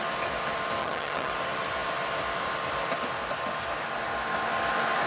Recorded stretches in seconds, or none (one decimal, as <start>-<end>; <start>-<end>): 0.0-0.8; 1.3-5.1